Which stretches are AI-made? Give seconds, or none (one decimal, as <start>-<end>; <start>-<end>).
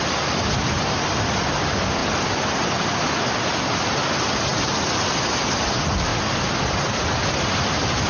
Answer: none